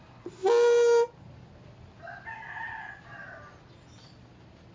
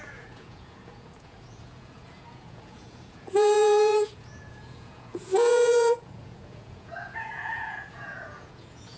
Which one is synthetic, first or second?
second